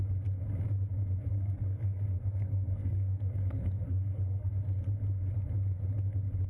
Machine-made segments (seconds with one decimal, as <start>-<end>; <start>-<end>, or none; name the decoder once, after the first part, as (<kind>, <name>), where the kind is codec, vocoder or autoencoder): 1.3-4.5 (codec, SNAC)